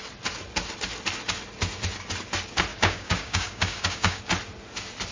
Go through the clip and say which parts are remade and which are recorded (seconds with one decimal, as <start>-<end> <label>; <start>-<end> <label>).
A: 0.0-2.7 recorded; 2.7-4.2 remade; 4.2-5.1 recorded